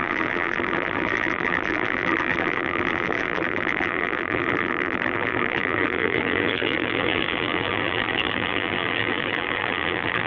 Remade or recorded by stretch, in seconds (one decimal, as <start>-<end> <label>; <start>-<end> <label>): 0.0-10.3 remade